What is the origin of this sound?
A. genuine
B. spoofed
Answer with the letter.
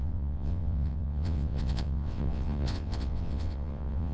B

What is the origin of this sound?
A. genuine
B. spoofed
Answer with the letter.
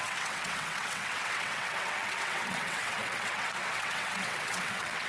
B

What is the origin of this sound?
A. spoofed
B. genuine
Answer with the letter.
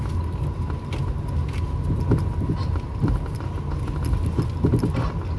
B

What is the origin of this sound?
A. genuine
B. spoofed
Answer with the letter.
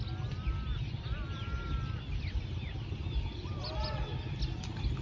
A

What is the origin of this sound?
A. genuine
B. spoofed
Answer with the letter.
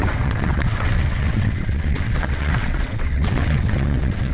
B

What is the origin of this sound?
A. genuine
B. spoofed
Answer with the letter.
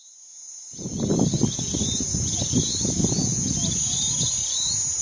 A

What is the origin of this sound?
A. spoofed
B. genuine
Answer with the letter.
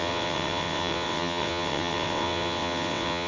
A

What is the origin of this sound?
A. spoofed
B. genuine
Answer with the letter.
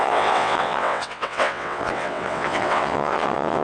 A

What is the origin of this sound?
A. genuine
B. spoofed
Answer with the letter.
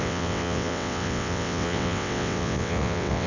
B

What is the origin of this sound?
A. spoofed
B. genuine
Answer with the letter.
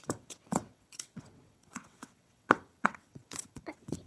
A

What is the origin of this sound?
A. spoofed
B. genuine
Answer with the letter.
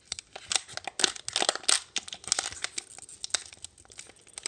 B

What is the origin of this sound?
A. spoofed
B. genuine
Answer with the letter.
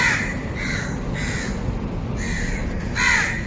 B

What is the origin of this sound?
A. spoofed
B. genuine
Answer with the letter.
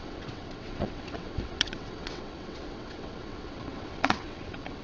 A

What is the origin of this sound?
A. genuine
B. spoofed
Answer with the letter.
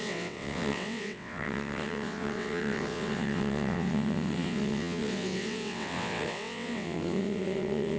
B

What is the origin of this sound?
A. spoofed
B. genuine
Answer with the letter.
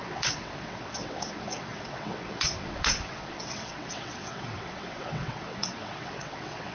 A